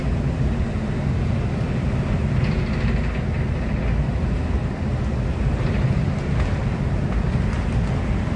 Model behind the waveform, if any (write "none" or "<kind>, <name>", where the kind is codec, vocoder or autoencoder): none